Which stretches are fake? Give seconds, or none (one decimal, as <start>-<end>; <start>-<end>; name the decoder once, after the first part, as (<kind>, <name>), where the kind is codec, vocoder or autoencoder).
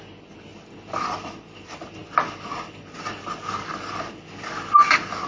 none